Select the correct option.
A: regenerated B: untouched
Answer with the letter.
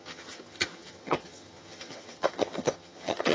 A